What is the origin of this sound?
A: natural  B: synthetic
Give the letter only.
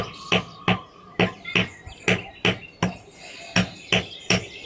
A